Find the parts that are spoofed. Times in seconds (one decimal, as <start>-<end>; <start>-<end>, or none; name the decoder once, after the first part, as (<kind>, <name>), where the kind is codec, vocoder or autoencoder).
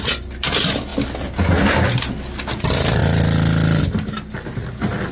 none